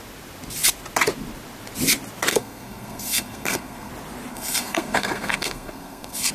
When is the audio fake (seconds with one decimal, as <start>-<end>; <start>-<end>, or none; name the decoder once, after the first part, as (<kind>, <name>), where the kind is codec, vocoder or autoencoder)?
2.3-3.9 (codec, SNAC); 4.3-6.3